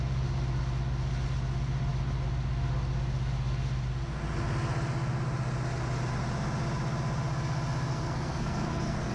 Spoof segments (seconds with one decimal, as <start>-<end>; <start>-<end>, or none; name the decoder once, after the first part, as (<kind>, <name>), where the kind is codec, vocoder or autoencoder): 7.9-9.1 (codec, SNAC)